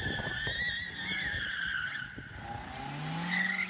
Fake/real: real